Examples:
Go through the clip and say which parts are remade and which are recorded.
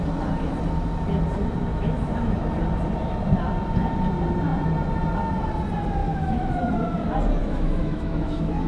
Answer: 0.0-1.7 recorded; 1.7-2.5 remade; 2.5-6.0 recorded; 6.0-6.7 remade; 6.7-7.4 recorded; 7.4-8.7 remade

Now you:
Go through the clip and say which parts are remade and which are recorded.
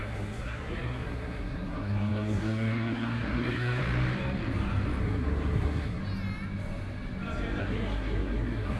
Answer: 0.0-3.8 remade; 3.8-5.0 recorded; 5.0-6.0 remade; 6.0-7.6 recorded; 7.6-8.8 remade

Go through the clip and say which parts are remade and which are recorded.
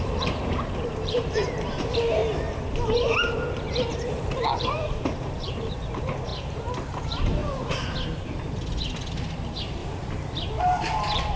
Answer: 0.0-2.2 remade; 2.2-3.9 recorded; 3.9-7.4 remade; 7.4-9.1 recorded; 9.1-9.8 remade; 9.8-10.6 recorded; 10.6-11.4 remade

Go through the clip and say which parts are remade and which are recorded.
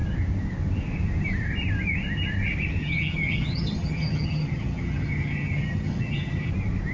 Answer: 0.0-2.8 recorded; 2.8-6.5 remade; 6.5-6.9 recorded